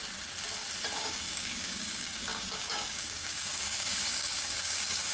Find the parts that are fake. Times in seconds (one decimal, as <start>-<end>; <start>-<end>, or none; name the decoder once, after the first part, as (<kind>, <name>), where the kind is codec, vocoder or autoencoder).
1.0-5.1 (codec, DAC)